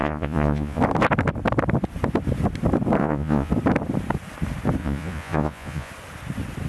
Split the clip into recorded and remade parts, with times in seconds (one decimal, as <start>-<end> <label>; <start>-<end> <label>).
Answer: 0.0-0.8 remade; 0.8-3.0 recorded; 3.0-3.5 remade; 3.5-4.8 recorded; 4.8-5.9 remade; 5.9-6.7 recorded